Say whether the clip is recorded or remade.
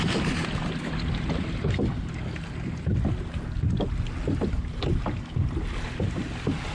recorded